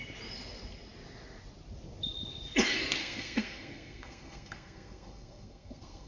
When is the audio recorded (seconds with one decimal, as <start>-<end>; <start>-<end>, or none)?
0.0-3.0